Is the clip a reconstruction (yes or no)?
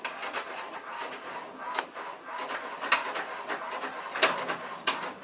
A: no